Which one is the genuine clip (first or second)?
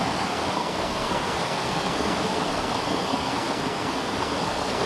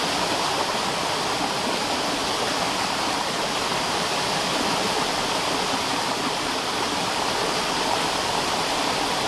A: second